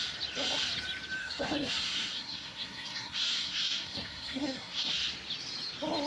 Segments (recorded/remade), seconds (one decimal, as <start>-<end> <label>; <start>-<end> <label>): 0.0-1.2 recorded; 1.2-4.9 remade; 4.9-6.1 recorded